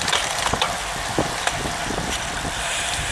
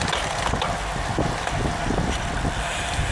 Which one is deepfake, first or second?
first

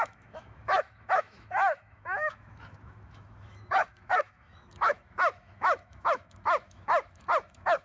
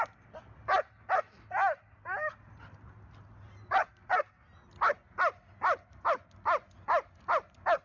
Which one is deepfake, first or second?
first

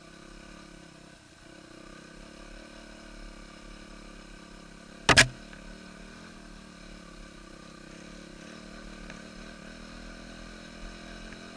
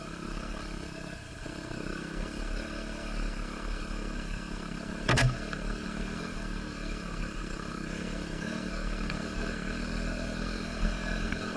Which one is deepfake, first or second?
second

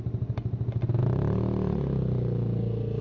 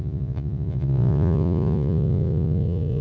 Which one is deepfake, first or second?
second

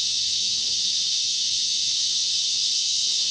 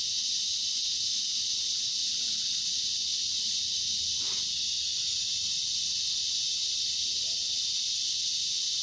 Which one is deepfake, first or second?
first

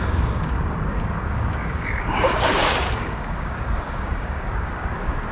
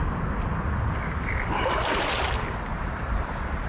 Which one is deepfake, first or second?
first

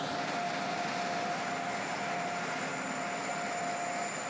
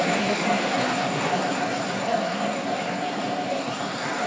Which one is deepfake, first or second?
second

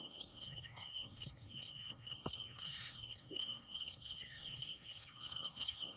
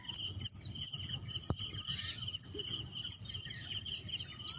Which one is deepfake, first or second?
first